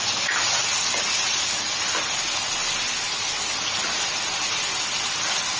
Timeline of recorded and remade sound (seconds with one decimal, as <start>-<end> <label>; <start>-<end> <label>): 0.0-5.6 recorded